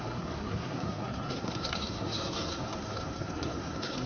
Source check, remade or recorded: remade